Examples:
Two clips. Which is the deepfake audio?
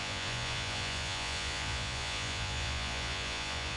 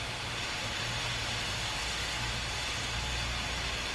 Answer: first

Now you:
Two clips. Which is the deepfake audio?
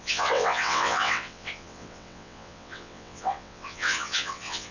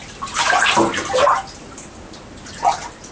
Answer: first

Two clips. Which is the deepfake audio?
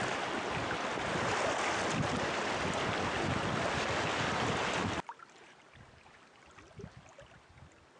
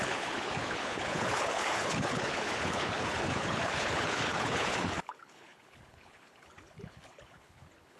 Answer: second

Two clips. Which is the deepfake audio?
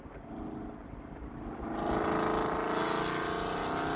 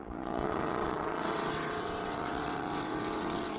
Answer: second